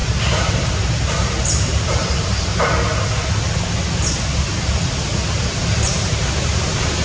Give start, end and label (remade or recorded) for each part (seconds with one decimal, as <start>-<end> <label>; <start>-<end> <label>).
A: 0.0-2.5 remade; 2.5-5.3 recorded; 5.3-7.0 remade